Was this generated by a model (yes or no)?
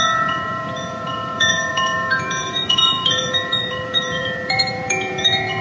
yes